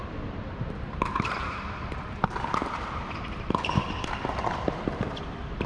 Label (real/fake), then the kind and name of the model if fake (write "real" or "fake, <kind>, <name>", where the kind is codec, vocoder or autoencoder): real